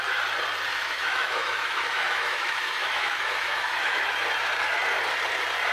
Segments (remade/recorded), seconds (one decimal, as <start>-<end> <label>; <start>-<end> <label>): 0.0-0.7 recorded; 0.7-4.1 remade; 4.1-5.7 recorded